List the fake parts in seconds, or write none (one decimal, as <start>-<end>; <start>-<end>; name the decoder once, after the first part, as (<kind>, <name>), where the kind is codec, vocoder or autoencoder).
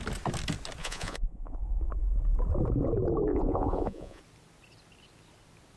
0.8-1.6 (vocoder, Vocos); 3.3-4.2